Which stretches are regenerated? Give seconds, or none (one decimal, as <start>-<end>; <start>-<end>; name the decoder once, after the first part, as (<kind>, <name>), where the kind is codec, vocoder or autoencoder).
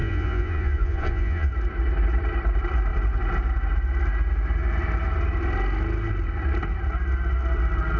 0.0-1.5 (vocoder, Vocos)